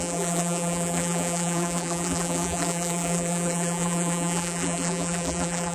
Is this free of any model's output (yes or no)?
no